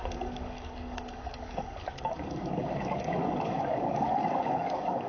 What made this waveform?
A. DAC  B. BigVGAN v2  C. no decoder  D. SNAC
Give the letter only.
A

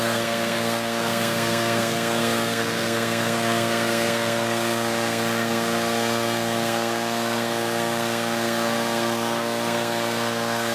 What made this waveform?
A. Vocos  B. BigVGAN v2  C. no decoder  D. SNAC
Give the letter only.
D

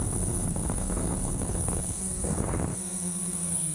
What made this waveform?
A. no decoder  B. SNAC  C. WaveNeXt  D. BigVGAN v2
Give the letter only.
B